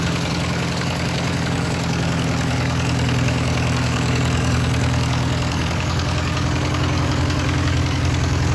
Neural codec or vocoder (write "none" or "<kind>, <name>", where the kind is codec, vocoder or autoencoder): codec, DAC